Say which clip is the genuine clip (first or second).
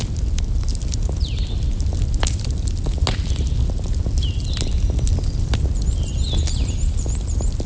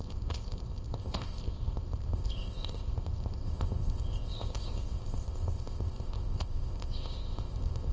first